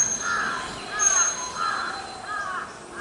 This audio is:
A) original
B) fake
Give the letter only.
A